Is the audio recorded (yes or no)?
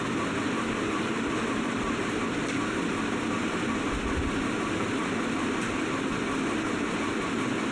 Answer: yes